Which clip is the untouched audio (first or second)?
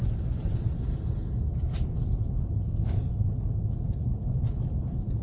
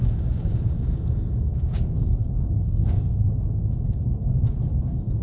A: first